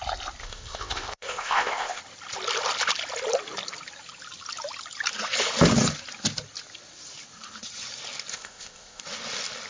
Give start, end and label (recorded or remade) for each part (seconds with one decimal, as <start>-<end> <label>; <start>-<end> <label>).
0.0-0.4 recorded; 0.4-2.0 remade; 2.0-8.3 recorded; 8.3-9.0 remade; 9.0-9.7 recorded